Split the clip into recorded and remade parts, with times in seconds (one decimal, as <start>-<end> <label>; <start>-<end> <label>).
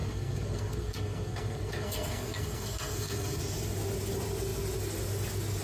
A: 0.0-3.4 remade; 3.4-5.6 recorded